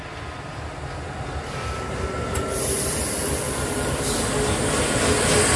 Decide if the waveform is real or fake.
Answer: real